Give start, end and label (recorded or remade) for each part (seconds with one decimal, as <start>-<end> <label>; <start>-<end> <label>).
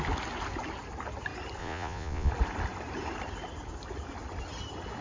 0.0-1.6 recorded; 1.6-2.3 remade; 2.3-5.0 recorded